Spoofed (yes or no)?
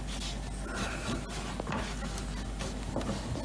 no